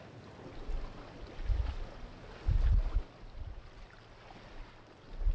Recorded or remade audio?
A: recorded